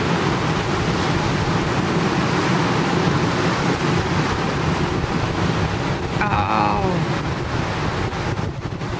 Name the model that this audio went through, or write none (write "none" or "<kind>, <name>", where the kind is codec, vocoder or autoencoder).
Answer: none